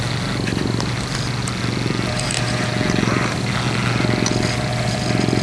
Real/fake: real